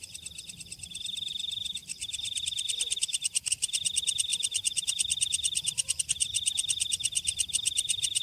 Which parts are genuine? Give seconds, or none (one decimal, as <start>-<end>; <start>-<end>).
0.0-1.8; 2.4-8.2

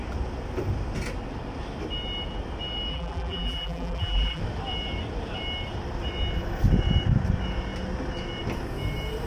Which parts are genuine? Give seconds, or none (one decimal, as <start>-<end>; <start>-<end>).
0.0-2.9; 4.4-9.3

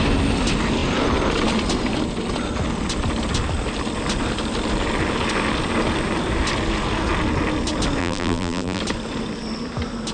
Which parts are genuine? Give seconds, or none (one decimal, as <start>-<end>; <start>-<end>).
0.0-8.0; 8.8-10.1

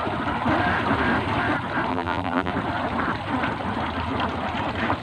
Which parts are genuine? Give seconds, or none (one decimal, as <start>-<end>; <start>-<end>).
0.0-1.9; 2.5-5.0

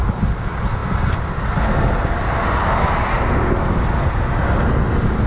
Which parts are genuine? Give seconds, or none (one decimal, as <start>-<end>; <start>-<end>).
0.0-5.3